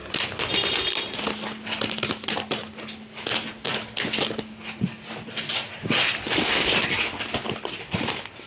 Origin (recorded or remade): recorded